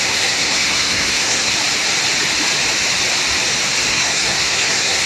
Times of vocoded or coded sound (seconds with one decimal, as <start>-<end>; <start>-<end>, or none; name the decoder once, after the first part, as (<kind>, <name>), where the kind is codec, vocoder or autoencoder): 0.0-1.5 (codec, SNAC); 3.9-5.1